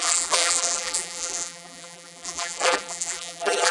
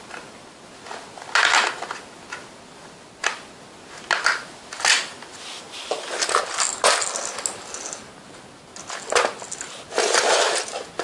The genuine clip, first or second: second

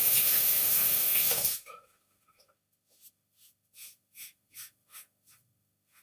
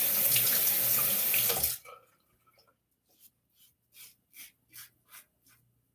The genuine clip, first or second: second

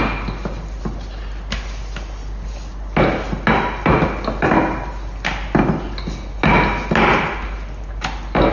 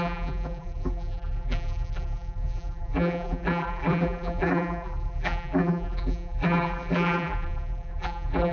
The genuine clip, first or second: first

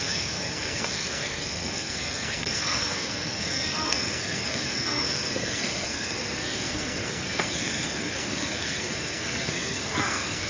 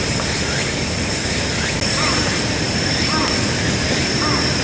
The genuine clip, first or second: second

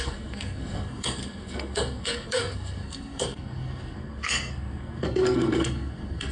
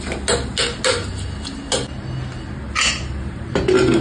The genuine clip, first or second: second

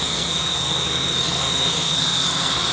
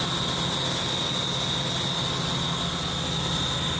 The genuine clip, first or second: second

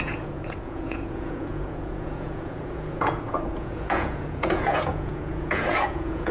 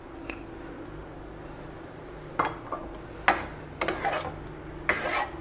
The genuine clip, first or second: second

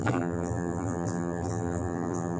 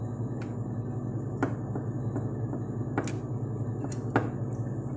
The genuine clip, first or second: second